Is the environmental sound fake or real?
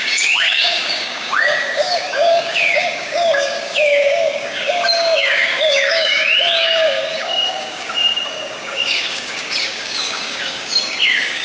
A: fake